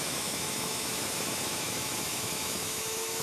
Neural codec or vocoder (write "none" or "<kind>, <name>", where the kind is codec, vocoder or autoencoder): autoencoder, DAC-VAE